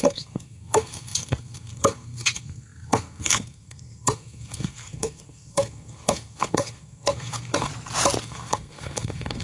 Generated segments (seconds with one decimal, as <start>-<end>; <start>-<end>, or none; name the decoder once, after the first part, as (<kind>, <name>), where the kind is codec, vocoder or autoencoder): 0.0-7.7 (codec, SNAC); 8.2-9.4